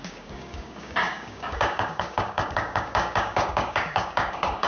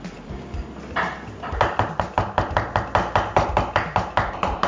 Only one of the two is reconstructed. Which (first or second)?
first